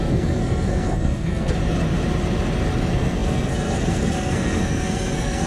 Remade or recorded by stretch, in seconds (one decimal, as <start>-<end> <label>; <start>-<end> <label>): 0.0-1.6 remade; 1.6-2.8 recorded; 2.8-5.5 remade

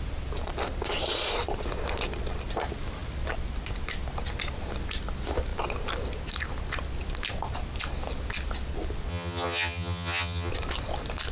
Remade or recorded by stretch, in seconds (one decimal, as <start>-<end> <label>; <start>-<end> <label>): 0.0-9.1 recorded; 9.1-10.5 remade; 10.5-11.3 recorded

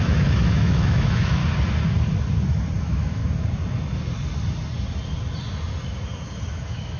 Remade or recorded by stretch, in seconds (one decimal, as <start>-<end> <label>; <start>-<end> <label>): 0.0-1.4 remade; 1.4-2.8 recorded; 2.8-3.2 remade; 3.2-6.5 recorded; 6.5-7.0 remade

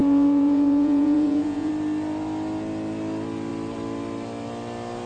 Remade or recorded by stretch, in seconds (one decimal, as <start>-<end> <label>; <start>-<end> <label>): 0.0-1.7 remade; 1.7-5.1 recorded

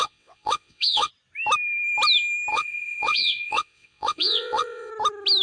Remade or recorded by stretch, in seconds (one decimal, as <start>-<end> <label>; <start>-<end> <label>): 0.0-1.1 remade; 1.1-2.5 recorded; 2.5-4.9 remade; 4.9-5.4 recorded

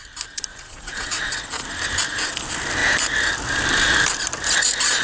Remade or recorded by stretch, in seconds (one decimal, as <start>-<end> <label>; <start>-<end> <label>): 0.0-0.5 recorded; 0.5-1.3 remade; 1.3-5.0 recorded

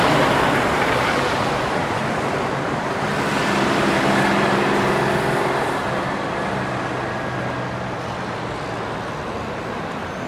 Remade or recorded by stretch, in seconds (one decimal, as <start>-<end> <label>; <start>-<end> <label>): 0.0-10.3 recorded

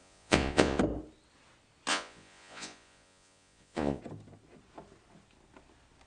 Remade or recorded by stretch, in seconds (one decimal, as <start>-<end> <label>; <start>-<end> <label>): 0.0-0.8 remade; 0.8-1.9 recorded; 1.9-4.0 remade; 4.0-6.1 recorded